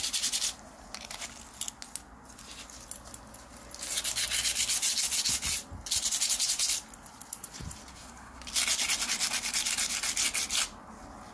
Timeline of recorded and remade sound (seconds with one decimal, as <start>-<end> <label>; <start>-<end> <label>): 0.0-7.9 recorded; 7.9-8.4 remade; 8.4-11.3 recorded